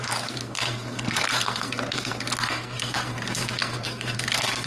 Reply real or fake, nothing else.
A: fake